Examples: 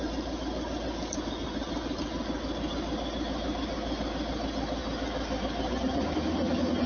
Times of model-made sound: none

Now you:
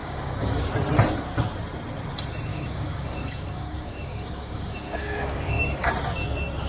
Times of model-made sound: 0.0-0.6 (codec, DAC); 2.5-5.9

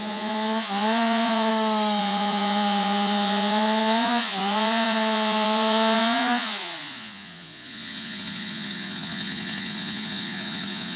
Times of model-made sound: 0.0-1.5 (vocoder, Vocos); 2.0-11.0

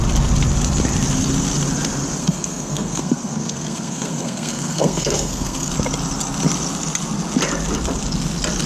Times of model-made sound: 2.2-5.7 (codec, SNAC)